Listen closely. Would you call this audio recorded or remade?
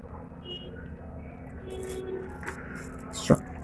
recorded